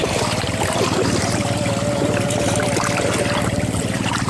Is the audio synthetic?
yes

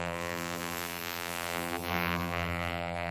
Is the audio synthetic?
yes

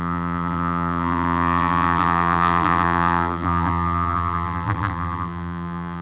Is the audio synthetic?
yes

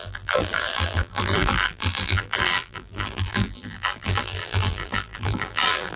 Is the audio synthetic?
yes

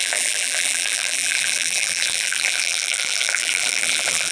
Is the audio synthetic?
yes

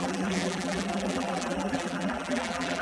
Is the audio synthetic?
yes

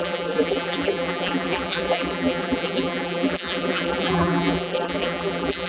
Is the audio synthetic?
yes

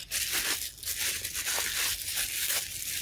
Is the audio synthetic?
no